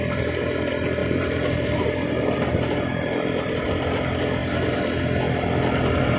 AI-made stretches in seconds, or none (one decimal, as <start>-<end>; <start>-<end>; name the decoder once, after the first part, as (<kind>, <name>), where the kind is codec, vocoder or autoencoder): 1.0-3.7 (vocoder, BigVGAN v2); 4.4-4.9

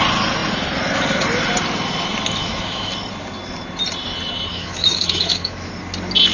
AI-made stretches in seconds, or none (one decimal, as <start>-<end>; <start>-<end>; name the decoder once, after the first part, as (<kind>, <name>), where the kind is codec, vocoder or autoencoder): 2.4-2.9 (autoencoder, DAC-VAE); 4.5-5.7

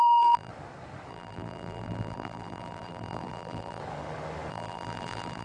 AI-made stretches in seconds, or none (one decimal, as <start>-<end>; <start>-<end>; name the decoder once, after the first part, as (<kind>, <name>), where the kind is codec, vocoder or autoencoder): 0.0-0.5 (vocoder, BigVGAN v2); 1.1-3.8; 4.5-5.4

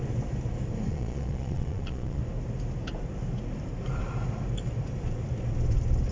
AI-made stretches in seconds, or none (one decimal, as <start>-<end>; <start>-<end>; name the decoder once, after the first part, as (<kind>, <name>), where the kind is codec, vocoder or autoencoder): 0.9-2.2 (vocoder, Vocos)

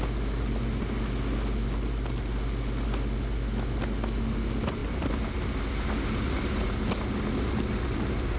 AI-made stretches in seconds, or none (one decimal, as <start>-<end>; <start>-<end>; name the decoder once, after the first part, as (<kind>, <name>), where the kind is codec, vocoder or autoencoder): none

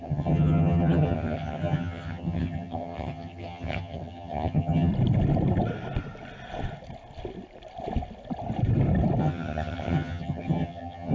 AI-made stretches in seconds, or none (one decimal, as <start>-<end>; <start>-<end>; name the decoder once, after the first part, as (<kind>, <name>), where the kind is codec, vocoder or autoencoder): 0.0-4.9 (vocoder, HiFi-GAN); 9.2-11.1

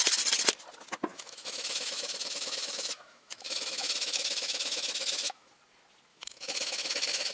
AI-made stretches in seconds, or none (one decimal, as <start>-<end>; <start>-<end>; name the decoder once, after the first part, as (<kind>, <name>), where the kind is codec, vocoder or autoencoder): 1.1-5.5 (autoencoder, DAC-VAE); 6.1-7.3

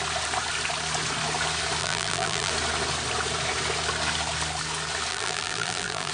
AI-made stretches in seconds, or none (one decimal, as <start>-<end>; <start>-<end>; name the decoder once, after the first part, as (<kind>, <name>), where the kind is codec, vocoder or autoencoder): 1.8-2.5 (vocoder, BigVGAN v2); 5.1-6.1